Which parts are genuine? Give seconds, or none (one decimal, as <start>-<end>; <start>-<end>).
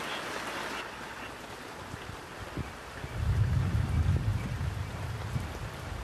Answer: 0.0-4.3; 5.0-6.0